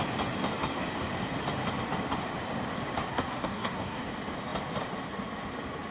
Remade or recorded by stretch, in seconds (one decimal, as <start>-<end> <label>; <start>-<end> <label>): 0.0-3.1 recorded; 3.1-4.0 remade; 4.0-5.9 recorded

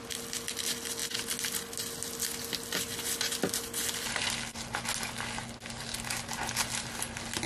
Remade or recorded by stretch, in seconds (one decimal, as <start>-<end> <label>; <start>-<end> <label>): 0.0-7.5 recorded

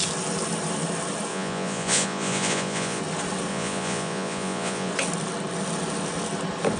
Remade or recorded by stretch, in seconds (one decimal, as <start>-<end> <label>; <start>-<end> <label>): 0.0-1.3 recorded; 1.3-3.0 remade; 3.0-3.5 recorded; 3.5-4.9 remade; 4.9-6.8 recorded

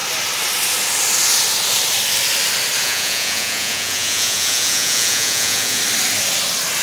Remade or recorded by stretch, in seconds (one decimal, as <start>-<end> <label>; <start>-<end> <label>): 0.0-2.8 recorded; 2.8-5.8 remade; 5.8-6.8 recorded

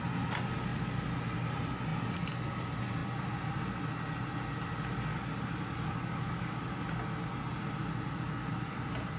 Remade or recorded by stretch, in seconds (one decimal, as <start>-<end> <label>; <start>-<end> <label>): 0.0-5.1 recorded; 5.1-6.7 remade; 6.7-9.2 recorded